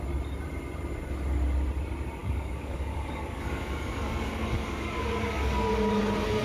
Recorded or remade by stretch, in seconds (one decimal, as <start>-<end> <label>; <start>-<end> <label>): 0.0-2.2 recorded; 2.2-5.7 remade; 5.7-6.4 recorded